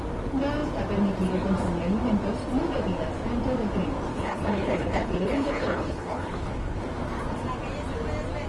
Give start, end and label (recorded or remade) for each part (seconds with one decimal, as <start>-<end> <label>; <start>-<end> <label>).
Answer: 0.0-4.1 recorded; 4.1-6.8 remade; 6.8-8.5 recorded